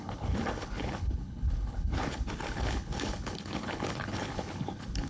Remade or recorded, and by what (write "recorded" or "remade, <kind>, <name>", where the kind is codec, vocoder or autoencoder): remade, codec, HILCodec